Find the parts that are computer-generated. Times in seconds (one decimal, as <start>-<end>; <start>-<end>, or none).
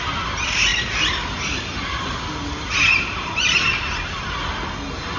none